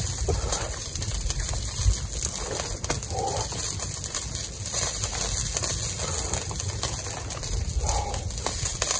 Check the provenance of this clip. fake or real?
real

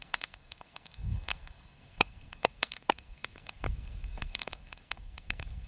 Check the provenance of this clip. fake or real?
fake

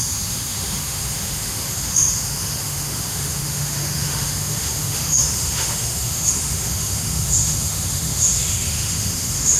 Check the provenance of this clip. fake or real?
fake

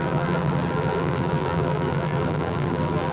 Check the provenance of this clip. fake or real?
fake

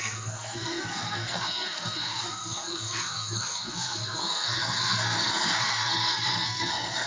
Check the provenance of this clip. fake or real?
fake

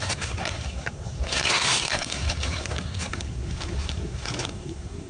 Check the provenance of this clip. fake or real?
fake